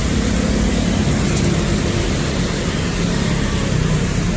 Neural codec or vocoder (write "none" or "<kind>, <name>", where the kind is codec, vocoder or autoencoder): none